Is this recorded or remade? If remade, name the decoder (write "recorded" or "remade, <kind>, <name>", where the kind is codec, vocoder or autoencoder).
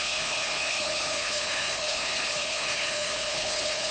remade, codec, HILCodec